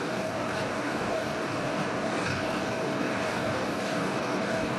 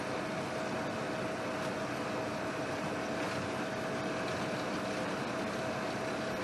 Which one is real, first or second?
second